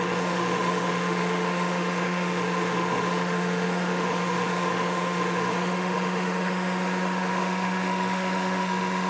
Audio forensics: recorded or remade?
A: remade